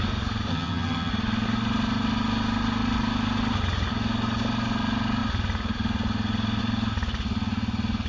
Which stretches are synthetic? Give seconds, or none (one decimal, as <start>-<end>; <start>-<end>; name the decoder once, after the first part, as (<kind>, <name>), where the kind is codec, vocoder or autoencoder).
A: 0.5-1.1 (vocoder, HiFi-GAN)